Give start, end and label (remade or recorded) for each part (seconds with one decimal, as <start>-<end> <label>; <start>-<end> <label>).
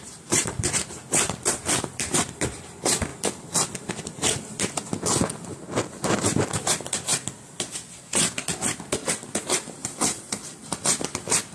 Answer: 0.0-7.1 remade; 7.1-9.1 recorded; 9.1-11.5 remade